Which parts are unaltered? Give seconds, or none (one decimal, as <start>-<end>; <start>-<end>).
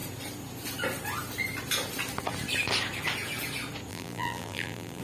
0.0-3.9